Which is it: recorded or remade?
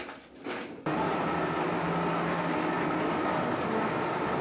recorded